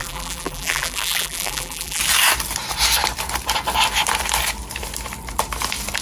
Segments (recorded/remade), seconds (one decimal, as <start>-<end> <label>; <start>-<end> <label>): 0.0-2.0 remade; 2.0-6.0 recorded